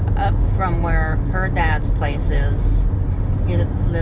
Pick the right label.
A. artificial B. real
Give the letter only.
B